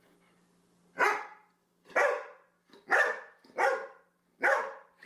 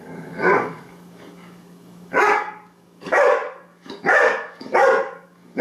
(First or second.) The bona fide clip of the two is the first